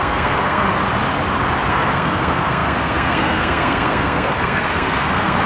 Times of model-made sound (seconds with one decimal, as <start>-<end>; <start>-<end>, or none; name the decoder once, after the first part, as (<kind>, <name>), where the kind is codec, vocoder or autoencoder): 0.0-0.7 (codec, SNAC); 1.7-5.5